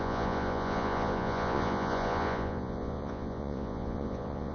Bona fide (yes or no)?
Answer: no